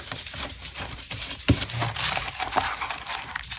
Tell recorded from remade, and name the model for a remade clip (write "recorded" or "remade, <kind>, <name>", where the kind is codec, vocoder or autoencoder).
remade, vocoder, BigVGAN v2